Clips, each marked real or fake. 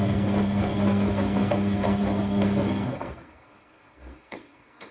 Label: fake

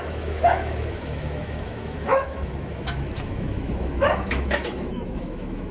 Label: fake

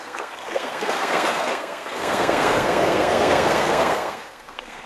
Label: fake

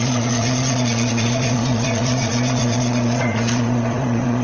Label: fake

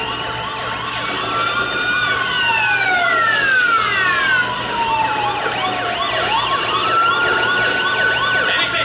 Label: real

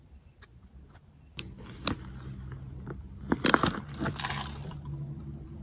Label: fake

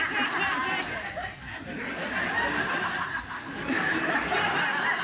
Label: real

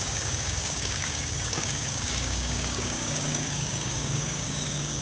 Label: fake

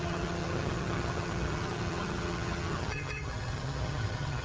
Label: fake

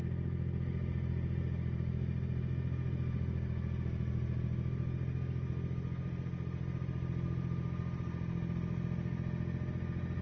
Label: real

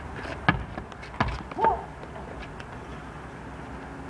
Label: real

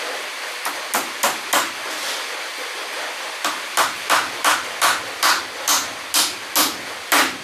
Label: real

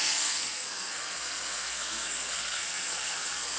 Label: fake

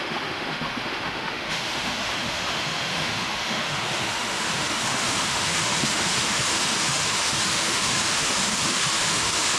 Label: fake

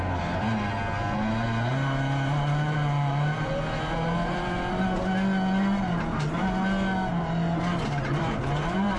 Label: real